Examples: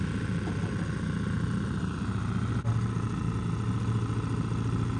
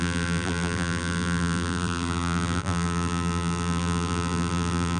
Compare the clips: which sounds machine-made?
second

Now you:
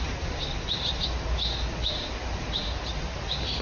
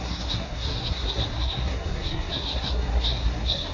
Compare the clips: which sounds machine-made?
second